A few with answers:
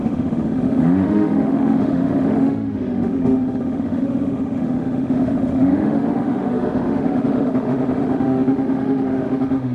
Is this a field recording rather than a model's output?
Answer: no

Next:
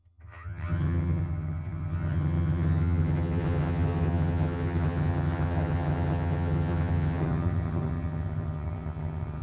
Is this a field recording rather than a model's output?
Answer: no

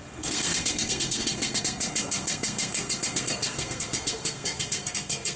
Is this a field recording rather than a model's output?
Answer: no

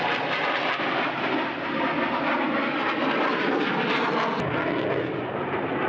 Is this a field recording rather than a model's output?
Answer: yes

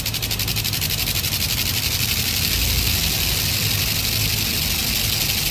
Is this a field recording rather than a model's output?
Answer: yes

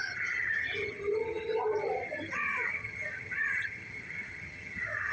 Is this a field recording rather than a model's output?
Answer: no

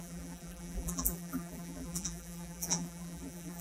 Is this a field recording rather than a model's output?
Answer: no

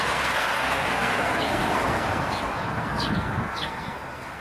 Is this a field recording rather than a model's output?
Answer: no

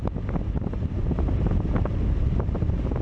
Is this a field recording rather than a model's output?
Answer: yes